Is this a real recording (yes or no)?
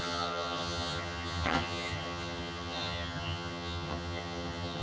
no